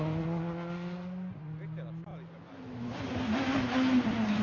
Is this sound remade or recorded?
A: recorded